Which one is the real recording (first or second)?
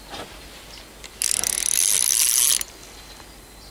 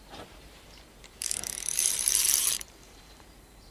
first